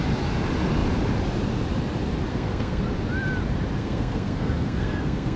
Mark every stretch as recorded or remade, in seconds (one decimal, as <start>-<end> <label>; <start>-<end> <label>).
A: 0.0-2.3 recorded; 2.3-2.8 remade; 2.8-3.8 recorded; 3.8-5.4 remade